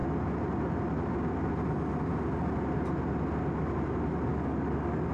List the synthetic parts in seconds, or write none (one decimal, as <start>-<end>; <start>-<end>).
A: 4.3-5.1